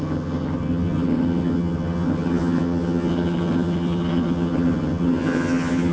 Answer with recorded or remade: remade